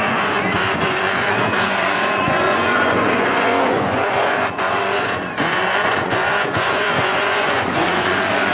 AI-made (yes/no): yes